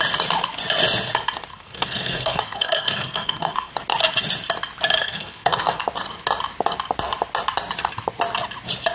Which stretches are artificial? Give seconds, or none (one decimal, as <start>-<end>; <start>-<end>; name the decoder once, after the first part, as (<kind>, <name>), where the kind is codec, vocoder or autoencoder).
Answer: 1.5-3.7 (codec, SNAC); 5.0-5.8